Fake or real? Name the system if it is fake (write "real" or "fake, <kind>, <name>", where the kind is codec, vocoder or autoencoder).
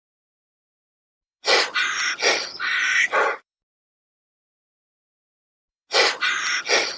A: real